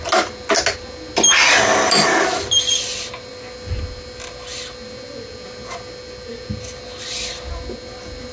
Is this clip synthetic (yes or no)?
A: no